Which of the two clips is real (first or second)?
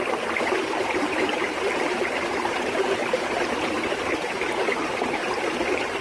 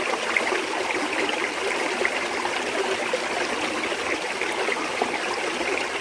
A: second